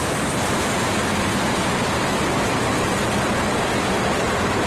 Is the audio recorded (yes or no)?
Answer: yes